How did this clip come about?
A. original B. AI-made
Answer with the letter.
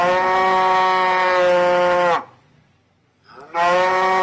A